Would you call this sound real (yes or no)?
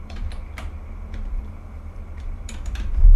no